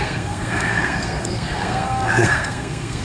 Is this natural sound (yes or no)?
no